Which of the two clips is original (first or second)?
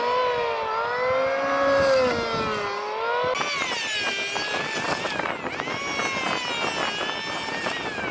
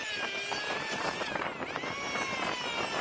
first